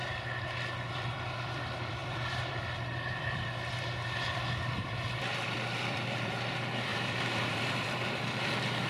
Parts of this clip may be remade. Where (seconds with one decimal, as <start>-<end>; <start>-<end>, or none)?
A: 0.9-8.9